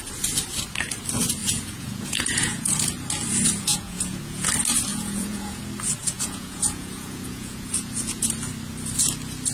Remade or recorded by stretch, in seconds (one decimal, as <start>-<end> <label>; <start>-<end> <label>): 0.0-1.4 recorded; 1.4-2.9 remade; 2.9-3.7 recorded; 3.7-4.5 remade; 4.5-4.9 recorded; 4.9-5.6 remade; 5.6-6.0 recorded; 6.0-8.3 remade; 8.3-9.5 recorded